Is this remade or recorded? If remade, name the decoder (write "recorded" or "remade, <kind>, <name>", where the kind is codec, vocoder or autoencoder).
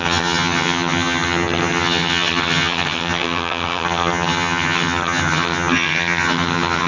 remade, vocoder, HiFi-GAN